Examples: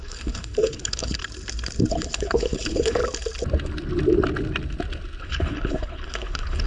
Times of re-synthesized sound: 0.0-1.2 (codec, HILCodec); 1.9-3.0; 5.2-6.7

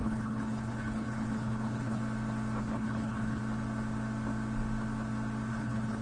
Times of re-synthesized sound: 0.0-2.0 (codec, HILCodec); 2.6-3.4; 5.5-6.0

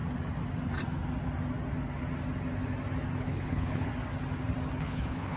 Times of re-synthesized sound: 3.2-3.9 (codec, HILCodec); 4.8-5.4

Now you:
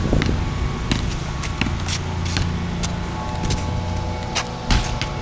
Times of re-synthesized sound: none

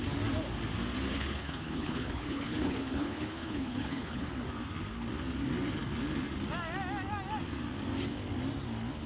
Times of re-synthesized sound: 1.1-4.3 (codec, HILCodec)

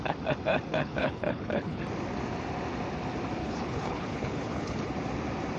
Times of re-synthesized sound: 0.7-1.8 (codec, HILCodec); 3.4-4.9

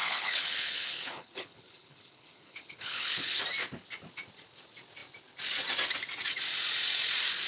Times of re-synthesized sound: 0.0-3.4 (codec, HILCodec)

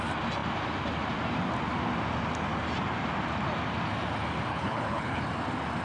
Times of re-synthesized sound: 4.5-5.2 (codec, HILCodec)